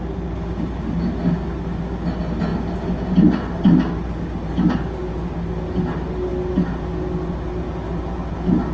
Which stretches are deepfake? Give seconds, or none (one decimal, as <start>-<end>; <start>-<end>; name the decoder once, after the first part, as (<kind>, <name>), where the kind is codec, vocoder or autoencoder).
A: none